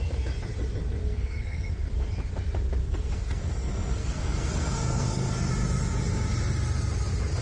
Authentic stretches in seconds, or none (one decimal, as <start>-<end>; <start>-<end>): 0.0-1.0; 1.9-2.8; 5.5-7.4